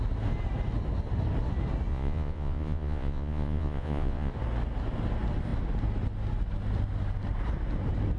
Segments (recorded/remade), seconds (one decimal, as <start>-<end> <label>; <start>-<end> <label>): 0.0-1.9 recorded; 1.9-4.3 remade; 4.3-8.2 recorded